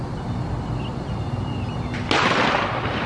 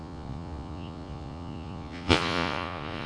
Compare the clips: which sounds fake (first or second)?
second